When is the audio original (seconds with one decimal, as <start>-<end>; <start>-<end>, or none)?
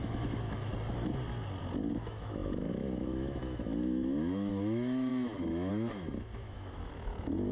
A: 0.7-1.9